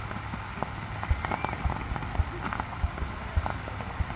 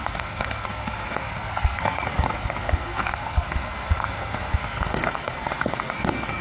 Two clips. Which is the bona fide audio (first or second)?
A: first